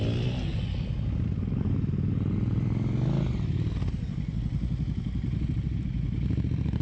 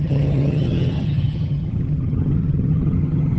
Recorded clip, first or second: first